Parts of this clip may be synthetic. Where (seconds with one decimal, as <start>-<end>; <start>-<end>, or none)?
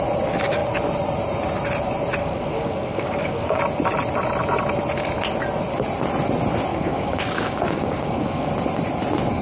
2.2-3.6; 6.7-8.5